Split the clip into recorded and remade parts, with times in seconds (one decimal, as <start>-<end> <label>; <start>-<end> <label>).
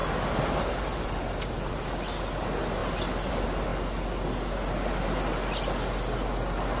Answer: 0.0-6.8 recorded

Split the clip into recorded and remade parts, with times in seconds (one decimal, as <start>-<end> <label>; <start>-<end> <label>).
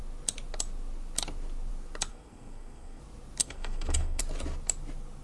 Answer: 0.0-2.1 recorded; 2.1-3.0 remade; 3.0-3.4 recorded; 3.4-4.2 remade; 4.2-5.2 recorded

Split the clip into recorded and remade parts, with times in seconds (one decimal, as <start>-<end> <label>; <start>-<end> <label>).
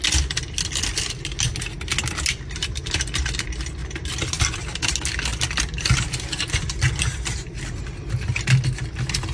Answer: 0.0-9.3 recorded